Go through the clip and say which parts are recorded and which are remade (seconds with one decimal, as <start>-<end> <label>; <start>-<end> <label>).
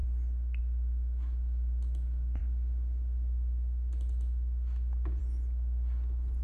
0.0-6.4 recorded